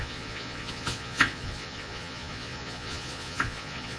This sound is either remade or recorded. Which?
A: remade